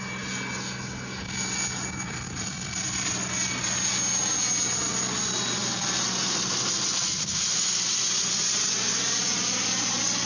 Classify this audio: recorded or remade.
recorded